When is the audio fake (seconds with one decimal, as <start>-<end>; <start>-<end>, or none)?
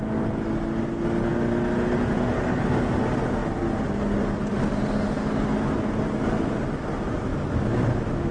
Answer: 7.3-8.3